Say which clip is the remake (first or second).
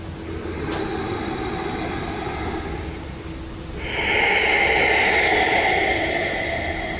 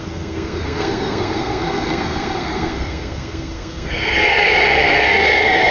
second